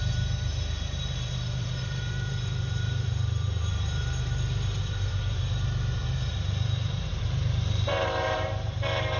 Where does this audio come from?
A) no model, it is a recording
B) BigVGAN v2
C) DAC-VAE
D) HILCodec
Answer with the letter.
B